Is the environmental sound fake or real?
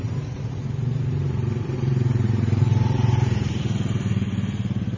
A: fake